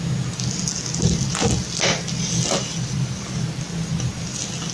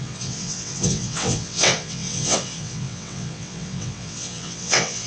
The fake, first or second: second